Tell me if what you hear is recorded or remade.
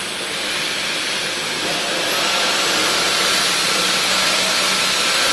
remade